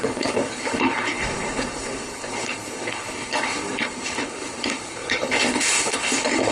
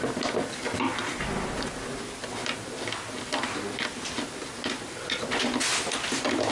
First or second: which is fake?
first